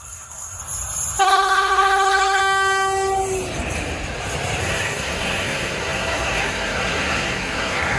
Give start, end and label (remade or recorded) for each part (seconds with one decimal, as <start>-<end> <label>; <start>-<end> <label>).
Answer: 0.0-0.6 remade; 0.6-1.2 recorded; 1.2-2.4 remade; 2.4-4.6 recorded; 4.6-8.0 remade